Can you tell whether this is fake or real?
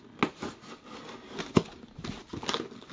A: real